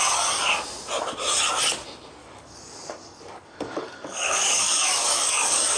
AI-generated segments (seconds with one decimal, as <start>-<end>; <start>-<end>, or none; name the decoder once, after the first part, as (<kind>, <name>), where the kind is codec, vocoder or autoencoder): 2.2-5.8 (codec, DAC)